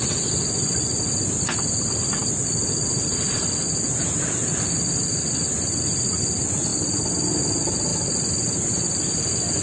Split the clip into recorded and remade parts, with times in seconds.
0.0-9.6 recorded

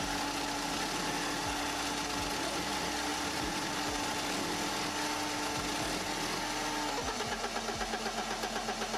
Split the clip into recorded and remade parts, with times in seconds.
0.0-3.1 recorded; 3.1-3.6 remade; 3.6-9.0 recorded

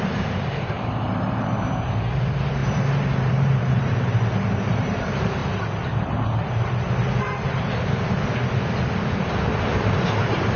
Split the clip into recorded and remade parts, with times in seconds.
0.0-5.4 remade; 5.4-9.5 recorded; 9.5-10.6 remade

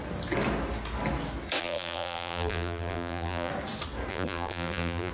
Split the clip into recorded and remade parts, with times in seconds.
0.0-1.6 recorded; 1.6-3.5 remade; 3.5-4.1 recorded; 4.1-5.1 remade